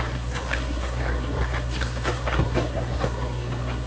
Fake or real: fake